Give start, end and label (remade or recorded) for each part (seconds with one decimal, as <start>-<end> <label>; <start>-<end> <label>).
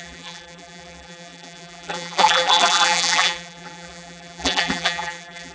0.0-5.5 remade